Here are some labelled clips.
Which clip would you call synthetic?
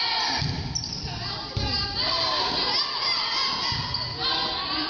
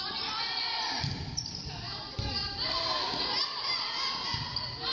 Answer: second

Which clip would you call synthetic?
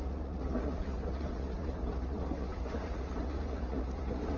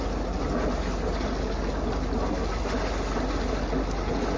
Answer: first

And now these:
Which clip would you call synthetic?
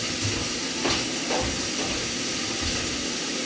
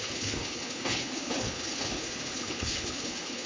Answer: second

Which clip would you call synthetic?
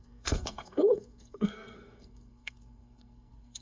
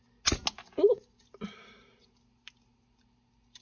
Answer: first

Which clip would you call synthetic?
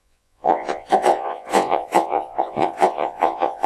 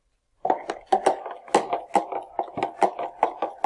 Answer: first